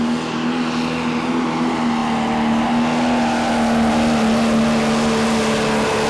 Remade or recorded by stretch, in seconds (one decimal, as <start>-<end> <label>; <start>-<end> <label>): 0.0-6.1 recorded